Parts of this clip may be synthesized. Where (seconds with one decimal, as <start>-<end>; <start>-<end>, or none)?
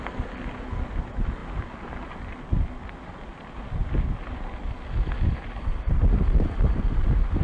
none